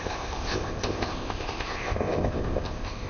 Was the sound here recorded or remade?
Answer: remade